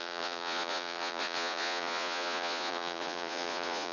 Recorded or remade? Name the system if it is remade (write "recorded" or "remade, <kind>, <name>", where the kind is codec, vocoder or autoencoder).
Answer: remade, vocoder, Vocos